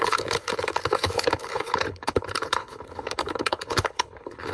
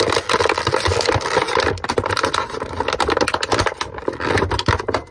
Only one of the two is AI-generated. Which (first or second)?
first